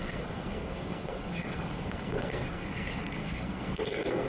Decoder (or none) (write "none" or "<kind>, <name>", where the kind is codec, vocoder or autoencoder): codec, SNAC